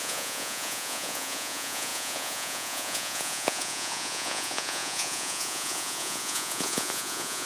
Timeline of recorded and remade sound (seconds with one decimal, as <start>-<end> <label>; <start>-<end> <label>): 0.0-7.5 remade